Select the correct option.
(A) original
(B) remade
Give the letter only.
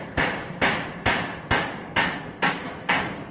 A